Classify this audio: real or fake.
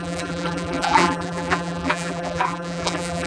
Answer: fake